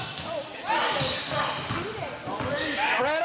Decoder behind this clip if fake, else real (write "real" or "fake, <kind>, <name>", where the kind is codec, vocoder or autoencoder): real